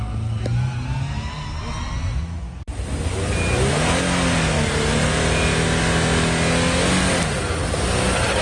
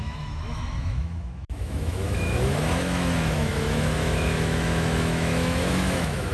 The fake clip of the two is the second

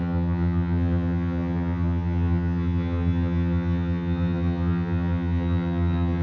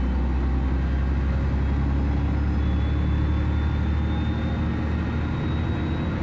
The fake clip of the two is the first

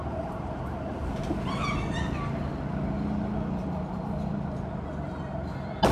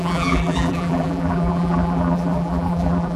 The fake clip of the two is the second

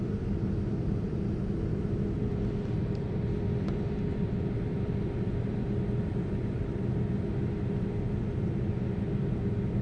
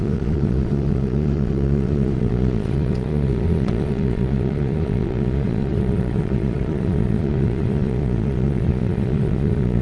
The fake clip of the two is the second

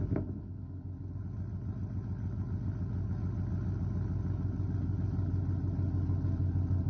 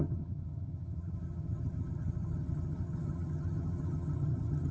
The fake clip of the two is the second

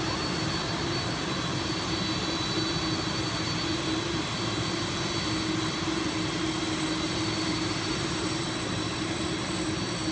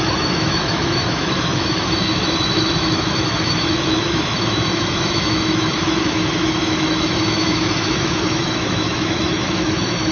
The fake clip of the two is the second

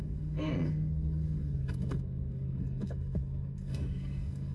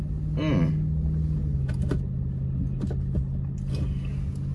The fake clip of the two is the first